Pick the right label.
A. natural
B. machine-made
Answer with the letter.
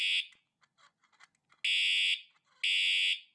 A